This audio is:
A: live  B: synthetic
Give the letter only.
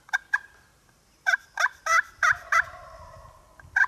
A